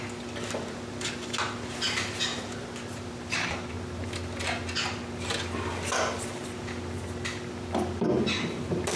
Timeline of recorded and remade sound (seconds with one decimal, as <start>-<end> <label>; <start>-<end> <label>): 0.0-9.0 recorded